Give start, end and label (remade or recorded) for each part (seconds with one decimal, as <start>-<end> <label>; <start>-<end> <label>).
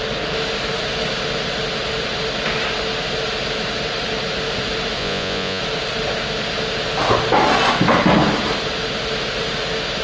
0.0-5.0 recorded; 5.0-5.6 remade; 5.6-10.0 recorded